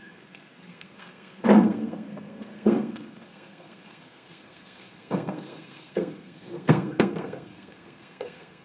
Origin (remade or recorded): remade